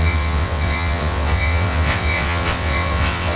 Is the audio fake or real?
fake